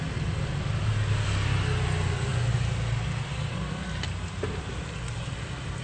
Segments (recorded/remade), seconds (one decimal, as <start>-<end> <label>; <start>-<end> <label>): 0.0-5.8 recorded